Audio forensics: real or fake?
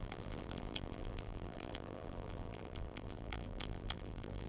fake